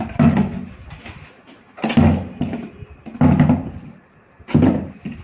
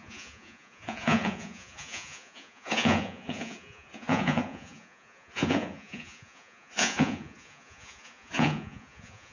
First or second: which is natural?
first